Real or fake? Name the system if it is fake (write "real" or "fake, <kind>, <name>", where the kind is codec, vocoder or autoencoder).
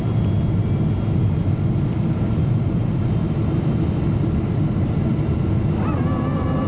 real